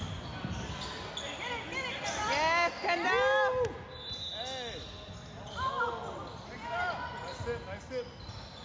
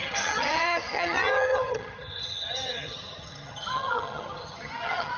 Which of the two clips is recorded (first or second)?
first